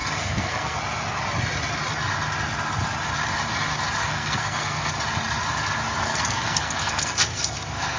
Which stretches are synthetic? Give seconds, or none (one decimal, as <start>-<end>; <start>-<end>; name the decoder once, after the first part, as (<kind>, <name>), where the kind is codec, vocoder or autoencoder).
0.0-0.8 (codec, SNAC); 4.0-4.9; 6.0-8.0